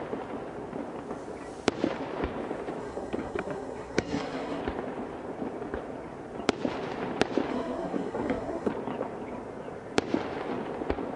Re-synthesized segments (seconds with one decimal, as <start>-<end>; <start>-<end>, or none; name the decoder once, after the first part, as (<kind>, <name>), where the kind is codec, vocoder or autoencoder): 2.8-4.6 (codec, SNAC); 7.5-8.7